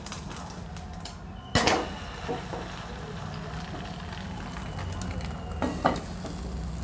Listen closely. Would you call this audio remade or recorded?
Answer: recorded